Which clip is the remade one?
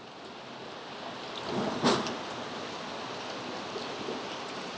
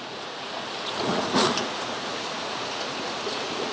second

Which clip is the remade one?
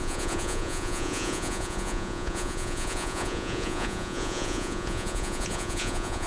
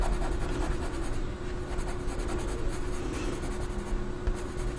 first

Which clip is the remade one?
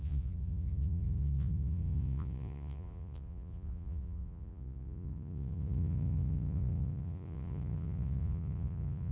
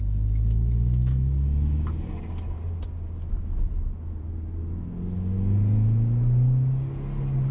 first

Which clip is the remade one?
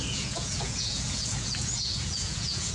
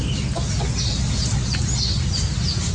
first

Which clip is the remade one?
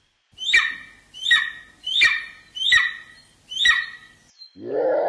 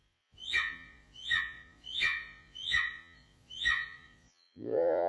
second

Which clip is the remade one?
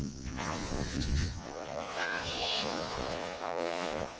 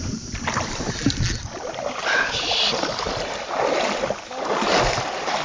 first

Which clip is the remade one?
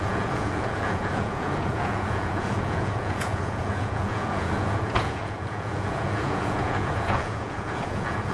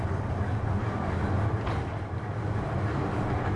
first